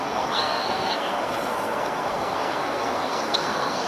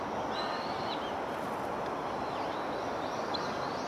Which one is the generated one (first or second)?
first